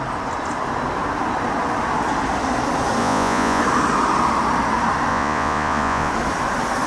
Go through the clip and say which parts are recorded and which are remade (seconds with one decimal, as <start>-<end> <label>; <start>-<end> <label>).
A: 0.0-3.0 recorded; 3.0-3.6 remade; 3.6-5.1 recorded; 5.1-6.1 remade; 6.1-6.9 recorded